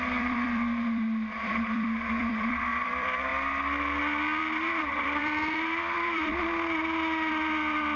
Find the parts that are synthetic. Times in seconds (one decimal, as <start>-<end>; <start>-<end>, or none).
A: 0.0-3.3; 4.4-6.3; 7.3-8.0